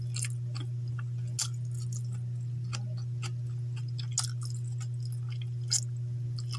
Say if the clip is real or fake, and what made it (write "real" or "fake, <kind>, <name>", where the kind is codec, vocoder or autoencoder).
real